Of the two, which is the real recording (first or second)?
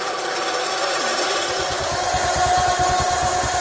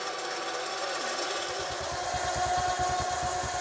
second